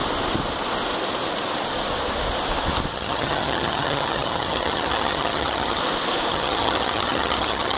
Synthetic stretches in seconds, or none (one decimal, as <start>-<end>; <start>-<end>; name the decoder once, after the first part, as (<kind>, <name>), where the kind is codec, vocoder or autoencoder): 2.9-5.8 (vocoder, HiFi-GAN); 6.3-7.8